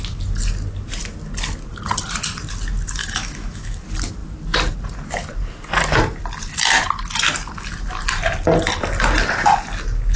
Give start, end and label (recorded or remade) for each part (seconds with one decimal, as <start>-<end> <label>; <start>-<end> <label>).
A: 0.0-3.0 recorded; 3.0-3.8 remade; 3.8-10.2 recorded